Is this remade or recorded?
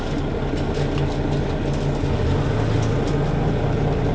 recorded